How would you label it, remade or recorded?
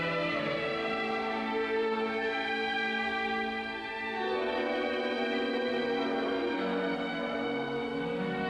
recorded